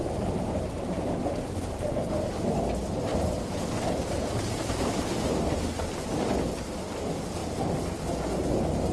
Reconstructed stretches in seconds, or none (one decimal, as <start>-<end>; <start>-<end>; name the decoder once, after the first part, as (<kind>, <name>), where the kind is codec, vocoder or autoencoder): 0.0-1.8 (vocoder, BigVGAN v2); 3.1-5.3

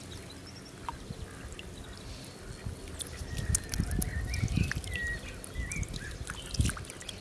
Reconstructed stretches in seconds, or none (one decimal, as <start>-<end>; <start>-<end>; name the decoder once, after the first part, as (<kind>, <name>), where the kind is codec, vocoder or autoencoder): none

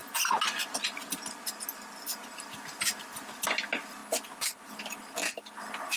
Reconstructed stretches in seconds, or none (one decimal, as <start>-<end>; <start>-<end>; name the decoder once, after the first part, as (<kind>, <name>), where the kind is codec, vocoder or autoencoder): none